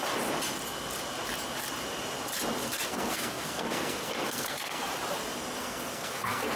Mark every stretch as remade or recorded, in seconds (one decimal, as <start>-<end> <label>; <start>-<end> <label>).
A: 0.0-2.6 recorded; 2.6-4.9 remade; 4.9-5.6 recorded; 5.6-6.6 remade